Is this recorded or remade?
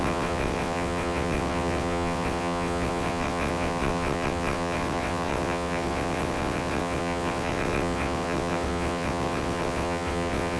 remade